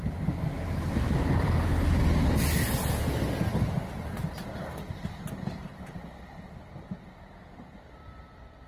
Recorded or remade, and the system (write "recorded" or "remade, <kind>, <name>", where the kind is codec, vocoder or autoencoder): recorded